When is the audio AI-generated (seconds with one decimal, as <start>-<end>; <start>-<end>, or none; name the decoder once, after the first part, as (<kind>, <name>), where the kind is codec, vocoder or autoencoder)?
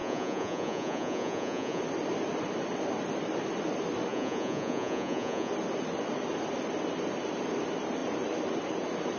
0.0-1.8 (vocoder, Vocos); 4.1-5.5